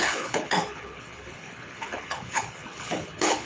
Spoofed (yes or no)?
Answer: yes